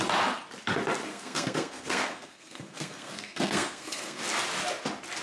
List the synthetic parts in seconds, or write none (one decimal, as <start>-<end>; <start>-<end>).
1.1-4.2